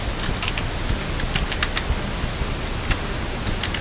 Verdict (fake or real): real